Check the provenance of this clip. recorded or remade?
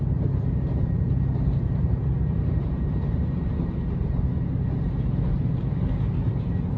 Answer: remade